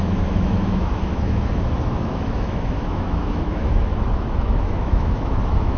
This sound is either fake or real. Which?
fake